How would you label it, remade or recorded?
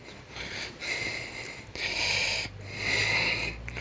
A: recorded